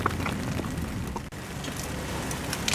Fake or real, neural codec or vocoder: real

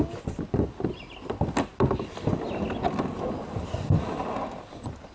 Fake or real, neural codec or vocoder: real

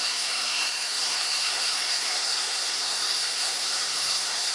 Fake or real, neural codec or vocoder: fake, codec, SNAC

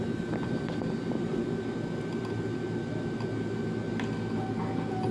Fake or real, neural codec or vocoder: real